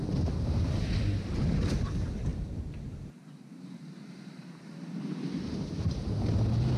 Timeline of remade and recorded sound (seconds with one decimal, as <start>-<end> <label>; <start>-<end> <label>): 0.0-2.3 recorded; 2.3-6.1 remade; 6.1-6.8 recorded